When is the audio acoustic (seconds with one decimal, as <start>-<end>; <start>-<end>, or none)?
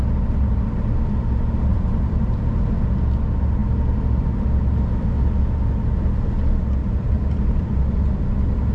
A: 0.0-1.7; 2.7-6.8; 7.8-8.7